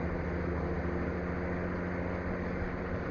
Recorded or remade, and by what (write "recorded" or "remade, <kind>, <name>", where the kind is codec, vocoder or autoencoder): recorded